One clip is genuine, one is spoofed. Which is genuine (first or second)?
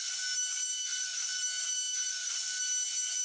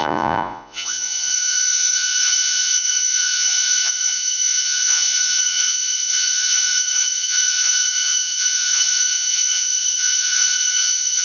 first